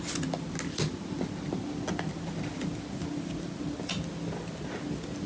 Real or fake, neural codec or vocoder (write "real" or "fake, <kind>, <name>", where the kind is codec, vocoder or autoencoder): real